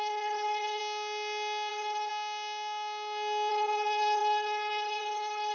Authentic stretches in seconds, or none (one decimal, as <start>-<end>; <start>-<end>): 0.8-1.7; 2.1-3.5